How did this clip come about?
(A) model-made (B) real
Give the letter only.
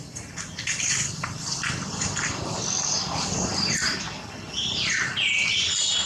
B